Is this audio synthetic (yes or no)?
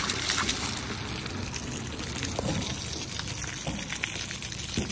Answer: no